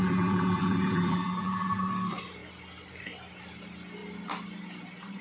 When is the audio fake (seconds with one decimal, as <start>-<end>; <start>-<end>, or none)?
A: 0.0-1.9